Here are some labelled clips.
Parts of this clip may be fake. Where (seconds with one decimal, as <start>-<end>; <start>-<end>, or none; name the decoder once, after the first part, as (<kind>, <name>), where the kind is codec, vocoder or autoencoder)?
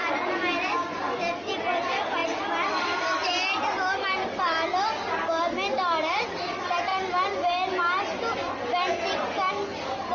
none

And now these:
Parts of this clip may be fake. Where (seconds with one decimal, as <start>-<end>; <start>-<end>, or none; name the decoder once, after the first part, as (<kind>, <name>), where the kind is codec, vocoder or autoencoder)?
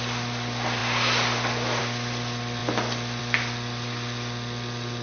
none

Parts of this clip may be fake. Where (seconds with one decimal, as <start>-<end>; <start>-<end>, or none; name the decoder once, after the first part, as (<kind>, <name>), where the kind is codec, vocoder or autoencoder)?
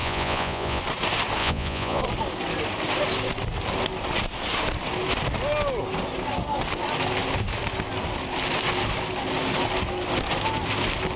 0.0-0.8 (vocoder, Vocos); 1.4-2.0